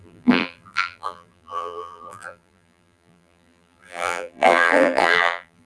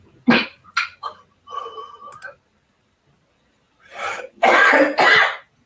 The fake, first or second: first